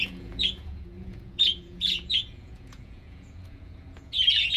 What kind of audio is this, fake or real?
fake